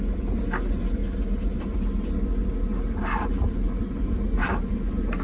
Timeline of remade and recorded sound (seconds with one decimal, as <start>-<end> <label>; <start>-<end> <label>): 0.0-5.2 recorded